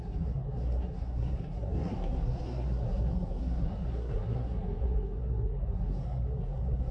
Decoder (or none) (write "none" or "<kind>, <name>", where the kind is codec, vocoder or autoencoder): codec, SNAC